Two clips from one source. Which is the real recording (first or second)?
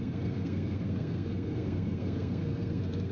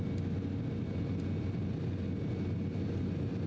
second